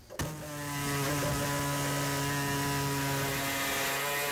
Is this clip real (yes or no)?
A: yes